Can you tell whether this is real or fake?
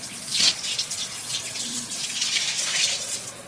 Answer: fake